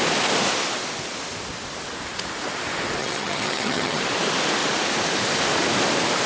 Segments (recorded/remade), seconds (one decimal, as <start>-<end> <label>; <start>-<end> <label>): 0.0-3.0 recorded; 3.0-4.0 remade; 4.0-6.3 recorded